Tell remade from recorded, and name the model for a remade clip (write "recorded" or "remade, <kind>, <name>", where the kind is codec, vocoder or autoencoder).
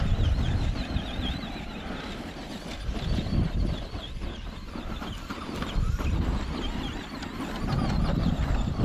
remade, vocoder, BigVGAN v2